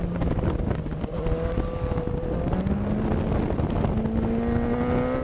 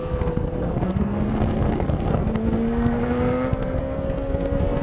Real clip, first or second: first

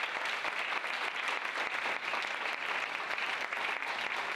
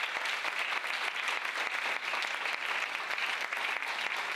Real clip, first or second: second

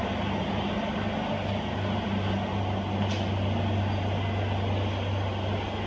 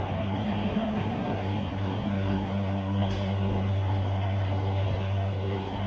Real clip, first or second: first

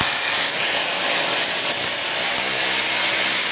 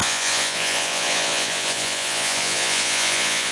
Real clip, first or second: first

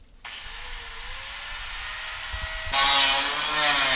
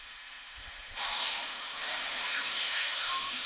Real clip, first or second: first